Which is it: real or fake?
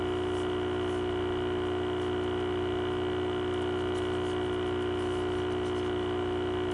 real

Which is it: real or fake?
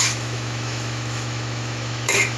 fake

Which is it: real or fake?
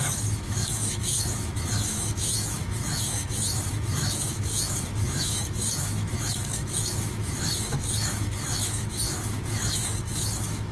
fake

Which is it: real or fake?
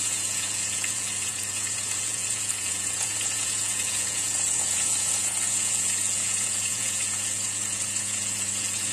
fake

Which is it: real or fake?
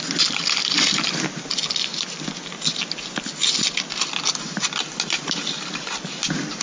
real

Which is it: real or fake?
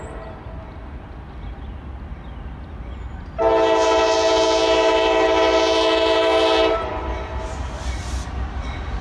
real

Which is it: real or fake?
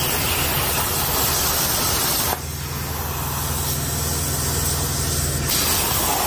real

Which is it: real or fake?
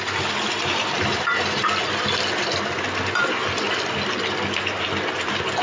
real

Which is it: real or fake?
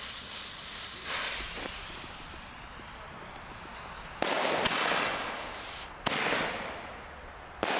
real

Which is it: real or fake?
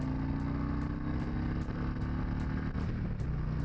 real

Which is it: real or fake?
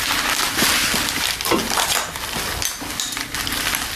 real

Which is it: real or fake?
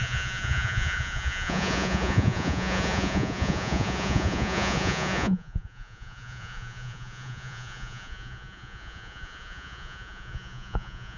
fake